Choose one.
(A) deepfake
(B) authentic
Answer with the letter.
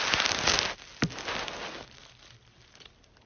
B